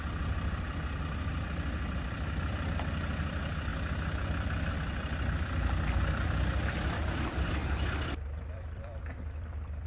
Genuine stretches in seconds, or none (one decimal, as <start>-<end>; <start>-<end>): 3.7-4.7; 7.6-8.1